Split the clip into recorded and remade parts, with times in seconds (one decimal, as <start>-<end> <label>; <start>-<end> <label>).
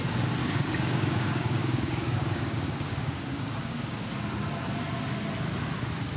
0.0-0.4 recorded; 0.4-4.1 remade; 4.1-6.2 recorded